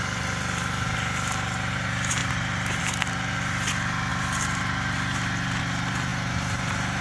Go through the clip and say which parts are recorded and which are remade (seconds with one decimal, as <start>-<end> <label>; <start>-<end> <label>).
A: 0.0-7.0 remade